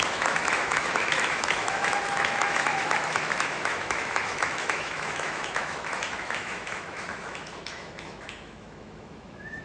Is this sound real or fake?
fake